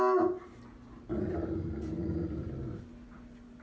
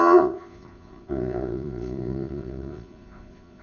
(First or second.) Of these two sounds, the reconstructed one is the second